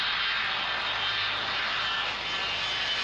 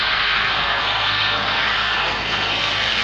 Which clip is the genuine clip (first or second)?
first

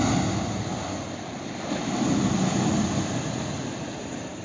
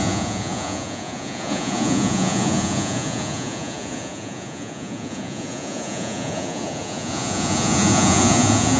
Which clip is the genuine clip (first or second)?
first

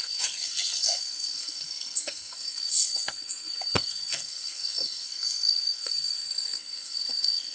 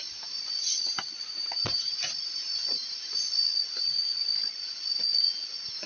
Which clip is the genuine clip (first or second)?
second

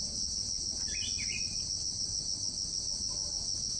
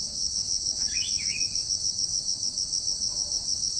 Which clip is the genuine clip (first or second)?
first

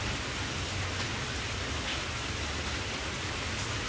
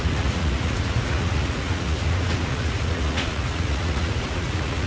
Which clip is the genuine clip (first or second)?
first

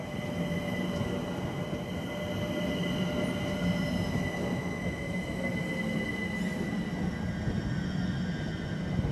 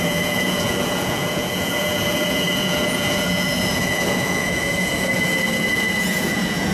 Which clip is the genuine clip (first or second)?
first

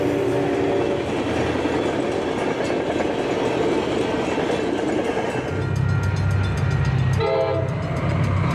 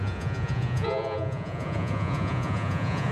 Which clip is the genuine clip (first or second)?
first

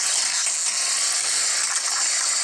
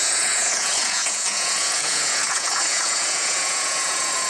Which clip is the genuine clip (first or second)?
first